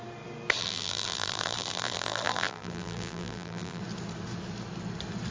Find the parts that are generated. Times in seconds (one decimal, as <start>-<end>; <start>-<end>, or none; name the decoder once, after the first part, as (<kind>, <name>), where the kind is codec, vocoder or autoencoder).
0.6-3.8 (vocoder, BigVGAN v2)